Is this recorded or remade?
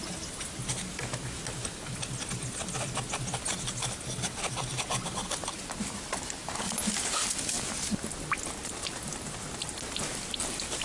recorded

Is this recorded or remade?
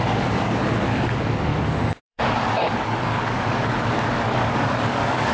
remade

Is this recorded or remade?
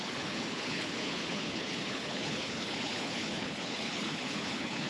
remade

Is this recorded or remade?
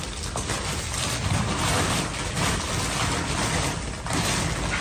recorded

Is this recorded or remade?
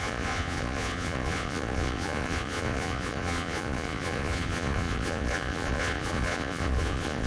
remade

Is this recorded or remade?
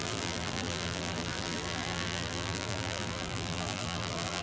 remade